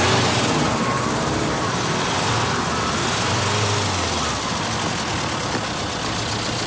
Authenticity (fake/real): real